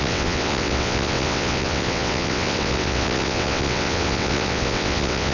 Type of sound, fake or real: fake